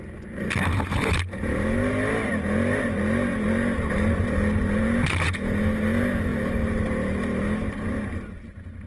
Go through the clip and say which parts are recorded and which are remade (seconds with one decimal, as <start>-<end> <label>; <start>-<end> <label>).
0.0-8.9 recorded